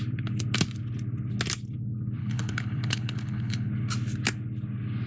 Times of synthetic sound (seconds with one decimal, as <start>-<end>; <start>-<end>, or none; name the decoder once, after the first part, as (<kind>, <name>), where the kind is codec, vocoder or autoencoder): 2.2-3.7 (codec, HILCodec)